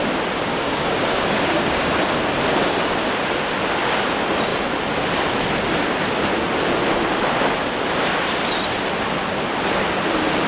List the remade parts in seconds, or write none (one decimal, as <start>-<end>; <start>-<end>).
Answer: 0.5-2.0